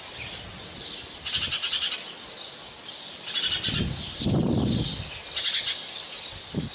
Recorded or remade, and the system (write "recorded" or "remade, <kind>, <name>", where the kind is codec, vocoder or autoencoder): recorded